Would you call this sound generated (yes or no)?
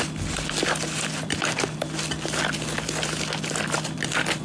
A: no